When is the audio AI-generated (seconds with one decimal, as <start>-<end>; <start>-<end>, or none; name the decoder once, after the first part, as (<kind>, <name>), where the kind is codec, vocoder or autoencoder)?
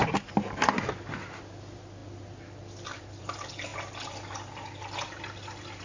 none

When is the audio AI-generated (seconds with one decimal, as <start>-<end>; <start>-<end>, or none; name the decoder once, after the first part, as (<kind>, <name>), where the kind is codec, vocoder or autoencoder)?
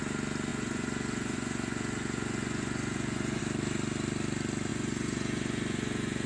0.5-3.4 (vocoder, Vocos); 4.7-6.3